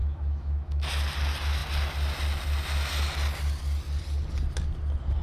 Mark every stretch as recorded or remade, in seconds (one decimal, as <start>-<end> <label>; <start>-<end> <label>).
0.0-0.9 remade; 0.9-5.2 recorded